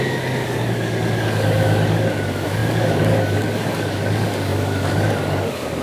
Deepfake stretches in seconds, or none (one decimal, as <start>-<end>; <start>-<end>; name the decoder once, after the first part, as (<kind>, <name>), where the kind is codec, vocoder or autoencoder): 0.0-5.8 (codec, DAC)